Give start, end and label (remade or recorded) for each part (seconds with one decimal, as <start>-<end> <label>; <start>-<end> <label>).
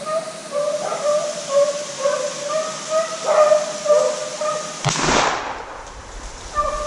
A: 0.0-6.9 recorded